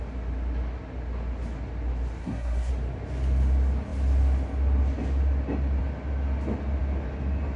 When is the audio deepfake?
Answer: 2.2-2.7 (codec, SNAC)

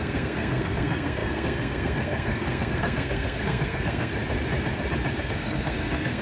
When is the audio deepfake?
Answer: 0.0-4.1 (codec, SNAC); 5.2-6.2

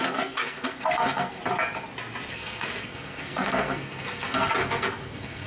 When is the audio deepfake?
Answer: 0.0-1.4 (codec, SNAC); 2.3-5.5

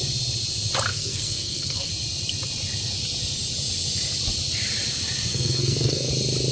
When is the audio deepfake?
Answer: 0.9-1.9 (codec, SNAC); 5.3-6.1

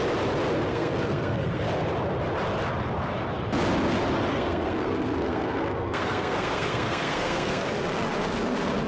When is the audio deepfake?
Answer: 0.7-1.6 (codec, SNAC); 4.3-8.9

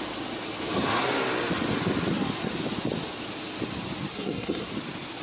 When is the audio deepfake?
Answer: 4.1-4.7 (codec, SNAC)

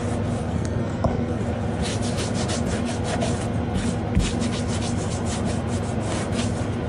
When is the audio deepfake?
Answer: 0.4-1.4 (codec, SNAC)